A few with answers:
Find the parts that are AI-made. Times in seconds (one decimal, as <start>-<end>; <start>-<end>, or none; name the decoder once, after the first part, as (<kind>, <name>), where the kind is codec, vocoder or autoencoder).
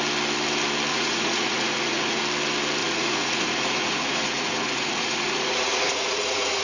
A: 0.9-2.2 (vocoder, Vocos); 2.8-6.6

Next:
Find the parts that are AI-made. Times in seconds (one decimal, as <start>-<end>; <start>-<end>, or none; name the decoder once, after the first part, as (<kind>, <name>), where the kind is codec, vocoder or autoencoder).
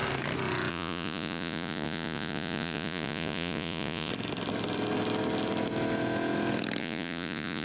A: 0.7-4.1 (vocoder, Vocos); 6.8-7.6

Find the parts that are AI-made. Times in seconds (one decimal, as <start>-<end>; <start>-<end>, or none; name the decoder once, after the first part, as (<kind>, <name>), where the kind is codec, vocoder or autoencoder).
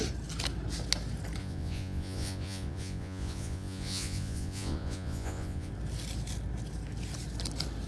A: 1.4-5.7 (vocoder, Vocos)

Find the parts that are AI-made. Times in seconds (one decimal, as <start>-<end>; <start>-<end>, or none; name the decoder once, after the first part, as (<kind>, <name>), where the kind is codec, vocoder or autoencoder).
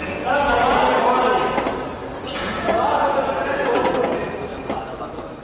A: 0.0-0.8 (vocoder, Vocos); 2.0-4.1